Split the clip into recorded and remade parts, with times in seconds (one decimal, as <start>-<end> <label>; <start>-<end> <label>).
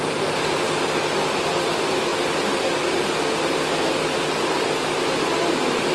0.0-5.9 recorded